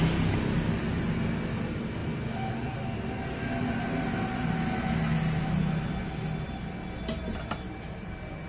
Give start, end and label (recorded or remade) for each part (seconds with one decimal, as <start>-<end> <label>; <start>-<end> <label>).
0.0-8.5 recorded